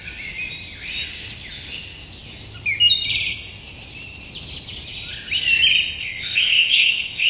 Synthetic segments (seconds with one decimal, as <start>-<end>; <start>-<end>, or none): 6.0-7.3